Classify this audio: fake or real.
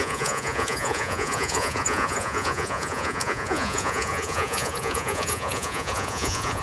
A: fake